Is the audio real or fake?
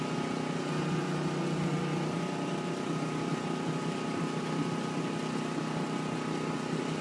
real